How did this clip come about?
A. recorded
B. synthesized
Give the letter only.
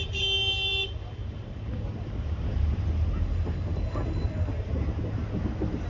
A